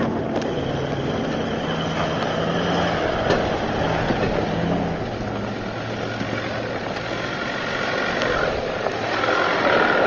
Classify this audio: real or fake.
real